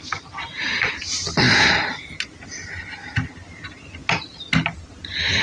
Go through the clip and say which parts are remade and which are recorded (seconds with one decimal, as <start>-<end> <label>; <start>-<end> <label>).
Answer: 0.0-5.4 recorded